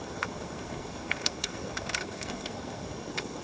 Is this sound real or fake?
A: fake